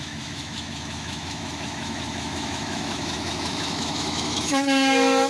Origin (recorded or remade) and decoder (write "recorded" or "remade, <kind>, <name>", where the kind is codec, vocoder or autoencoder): remade, autoencoder, DAC-VAE